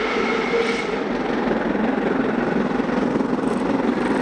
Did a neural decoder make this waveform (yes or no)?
no